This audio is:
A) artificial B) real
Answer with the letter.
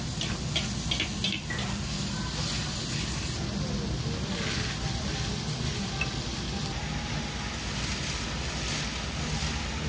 B